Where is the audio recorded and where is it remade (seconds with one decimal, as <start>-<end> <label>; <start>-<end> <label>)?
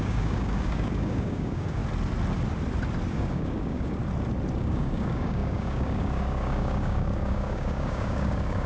0.0-1.8 remade; 1.8-3.1 recorded; 3.1-4.0 remade; 4.0-4.6 recorded; 4.6-8.7 remade